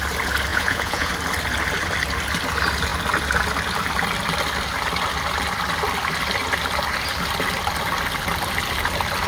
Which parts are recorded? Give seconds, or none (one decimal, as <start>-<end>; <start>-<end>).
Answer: 0.0-0.5; 1.1-9.3